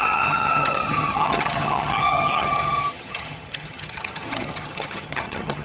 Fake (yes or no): yes